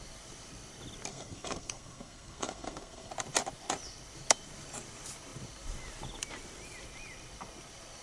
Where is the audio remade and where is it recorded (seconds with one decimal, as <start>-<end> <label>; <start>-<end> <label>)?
0.0-1.1 recorded; 1.1-3.1 remade; 3.1-8.0 recorded